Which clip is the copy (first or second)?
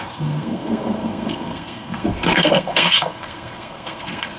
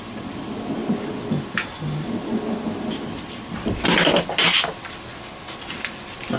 first